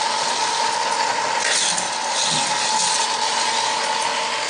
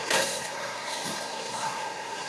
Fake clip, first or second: second